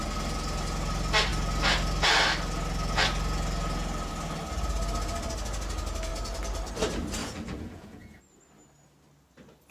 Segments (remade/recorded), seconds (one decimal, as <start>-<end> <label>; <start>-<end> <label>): 0.0-7.2 recorded; 7.2-8.2 remade; 8.2-9.7 recorded